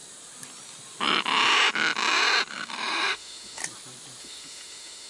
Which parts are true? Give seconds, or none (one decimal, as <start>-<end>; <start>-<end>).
0.0-2.5; 3.6-4.2